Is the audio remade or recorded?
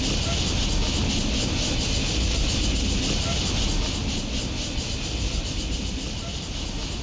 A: recorded